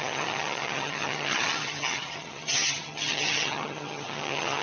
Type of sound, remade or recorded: remade